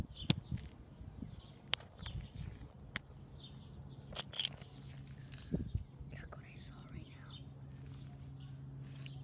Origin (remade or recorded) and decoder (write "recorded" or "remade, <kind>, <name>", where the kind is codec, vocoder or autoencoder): recorded